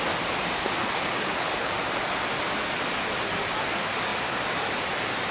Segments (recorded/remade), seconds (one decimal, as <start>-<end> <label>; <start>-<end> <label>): 0.0-0.8 recorded; 0.8-1.7 remade; 1.7-5.3 recorded